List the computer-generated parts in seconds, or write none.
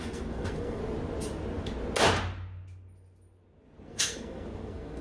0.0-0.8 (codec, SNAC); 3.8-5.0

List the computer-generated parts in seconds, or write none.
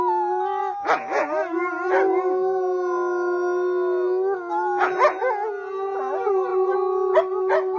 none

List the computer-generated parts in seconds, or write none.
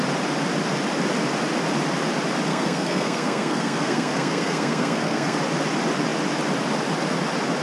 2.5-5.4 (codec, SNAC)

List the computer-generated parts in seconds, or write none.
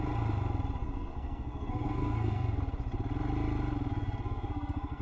0.8-2.6 (codec, SNAC); 3.9-5.0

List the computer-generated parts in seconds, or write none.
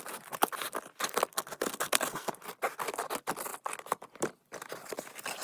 1.3-2.4 (codec, SNAC)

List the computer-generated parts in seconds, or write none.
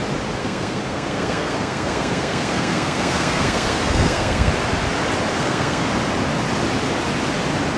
0.4-4.5 (codec, SNAC); 5.3-5.9